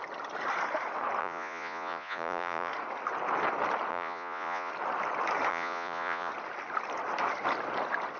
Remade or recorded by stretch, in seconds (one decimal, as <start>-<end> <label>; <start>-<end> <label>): 0.0-1.2 recorded; 1.2-2.7 remade; 2.7-3.9 recorded; 3.9-4.7 remade; 4.7-5.5 recorded; 5.5-6.3 remade; 6.3-8.2 recorded